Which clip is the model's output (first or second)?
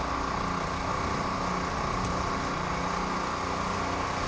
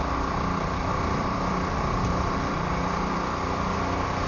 second